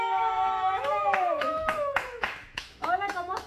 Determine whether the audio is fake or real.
fake